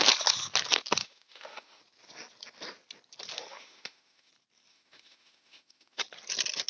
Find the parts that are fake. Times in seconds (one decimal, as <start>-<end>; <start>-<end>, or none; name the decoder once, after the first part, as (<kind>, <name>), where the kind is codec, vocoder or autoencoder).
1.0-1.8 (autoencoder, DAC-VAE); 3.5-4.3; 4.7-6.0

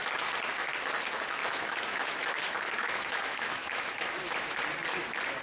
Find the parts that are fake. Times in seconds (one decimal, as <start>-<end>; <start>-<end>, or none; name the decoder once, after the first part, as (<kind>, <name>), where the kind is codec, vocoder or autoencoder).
1.4-4.6 (autoencoder, DAC-VAE)

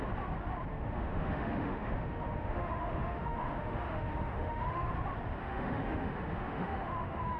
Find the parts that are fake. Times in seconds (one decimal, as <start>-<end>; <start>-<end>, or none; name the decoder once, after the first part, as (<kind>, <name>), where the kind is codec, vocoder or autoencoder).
0.7-4.9 (autoencoder, DAC-VAE); 5.4-7.4